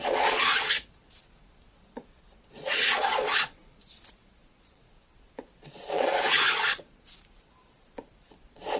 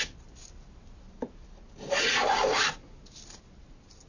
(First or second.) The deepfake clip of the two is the first